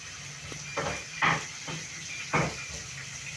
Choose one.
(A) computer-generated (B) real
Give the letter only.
A